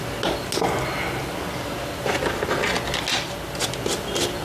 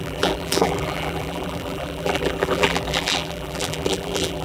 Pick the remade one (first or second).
second